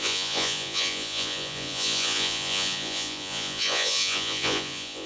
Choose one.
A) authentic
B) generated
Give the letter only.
B